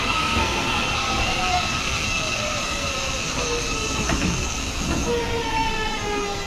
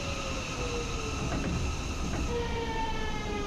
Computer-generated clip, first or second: first